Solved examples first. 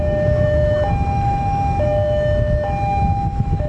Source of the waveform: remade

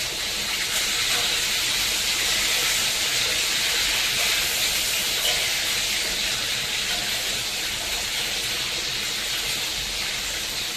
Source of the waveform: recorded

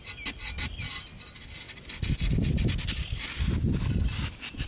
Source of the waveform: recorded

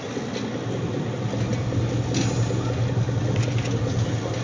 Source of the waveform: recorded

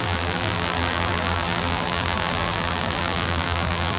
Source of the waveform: remade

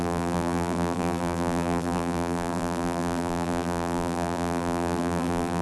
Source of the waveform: remade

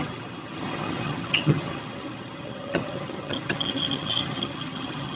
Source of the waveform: remade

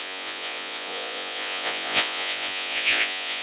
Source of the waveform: remade